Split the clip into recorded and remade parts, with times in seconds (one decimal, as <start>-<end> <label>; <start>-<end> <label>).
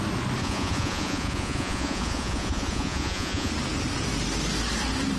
0.0-0.4 recorded; 0.4-3.5 remade; 3.5-5.2 recorded